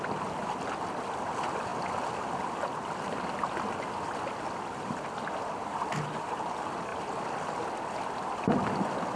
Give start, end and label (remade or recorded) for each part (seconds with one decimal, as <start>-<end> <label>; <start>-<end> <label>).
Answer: 0.0-9.2 recorded